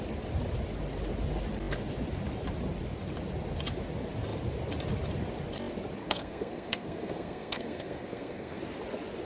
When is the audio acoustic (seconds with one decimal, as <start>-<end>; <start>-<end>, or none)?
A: 0.0-6.0; 8.6-9.3